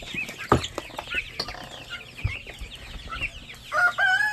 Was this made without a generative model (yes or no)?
yes